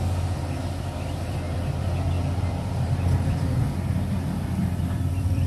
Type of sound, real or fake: fake